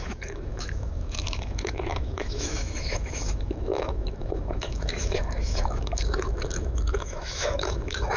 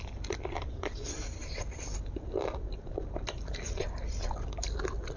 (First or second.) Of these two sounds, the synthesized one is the first